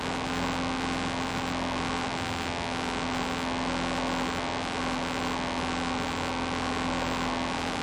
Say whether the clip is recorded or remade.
recorded